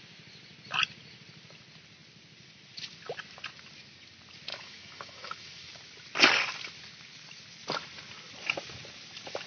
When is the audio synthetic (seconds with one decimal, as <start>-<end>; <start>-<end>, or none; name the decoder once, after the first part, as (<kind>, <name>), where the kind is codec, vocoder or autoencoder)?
4.5-5.7 (autoencoder, DAC-VAE)